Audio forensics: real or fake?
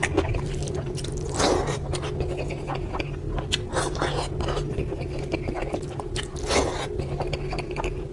real